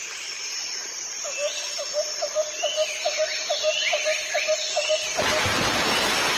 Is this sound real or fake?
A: real